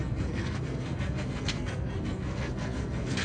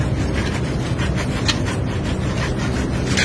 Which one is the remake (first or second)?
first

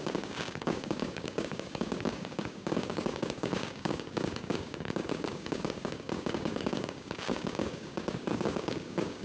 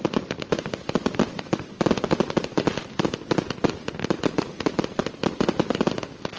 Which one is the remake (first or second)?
first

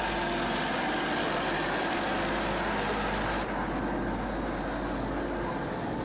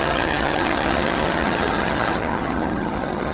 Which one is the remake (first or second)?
second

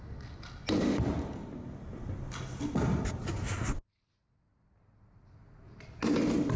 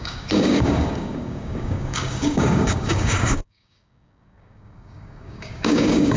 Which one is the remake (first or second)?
second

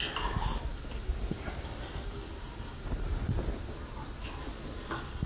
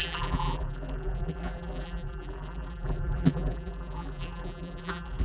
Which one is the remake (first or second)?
second